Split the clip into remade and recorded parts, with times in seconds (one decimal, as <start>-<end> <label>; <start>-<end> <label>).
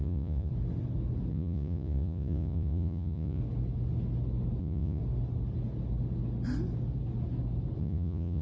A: 0.0-0.5 remade; 0.5-1.3 recorded; 1.3-3.4 remade; 3.4-4.6 recorded; 4.6-5.0 remade; 5.0-7.8 recorded; 7.8-8.4 remade